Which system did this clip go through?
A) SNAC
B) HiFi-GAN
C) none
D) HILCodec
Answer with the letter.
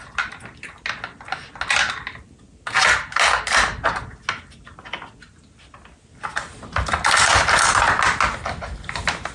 C